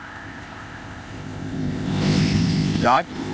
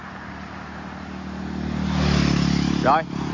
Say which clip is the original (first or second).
second